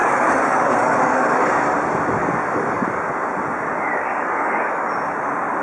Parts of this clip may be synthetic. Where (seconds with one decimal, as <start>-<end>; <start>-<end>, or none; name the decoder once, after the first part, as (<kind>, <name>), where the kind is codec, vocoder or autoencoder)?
0.0-1.5 (codec, DAC); 2.2-3.0; 3.9-4.9